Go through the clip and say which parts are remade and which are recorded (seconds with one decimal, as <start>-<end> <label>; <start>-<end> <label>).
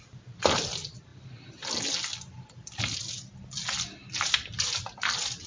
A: 0.0-5.5 recorded